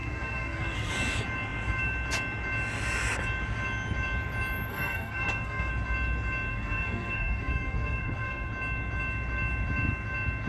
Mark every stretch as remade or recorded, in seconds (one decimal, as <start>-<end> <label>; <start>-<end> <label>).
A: 0.0-0.9 remade; 0.9-4.7 recorded; 4.7-5.7 remade; 5.7-6.5 recorded; 6.5-8.5 remade; 8.5-10.5 recorded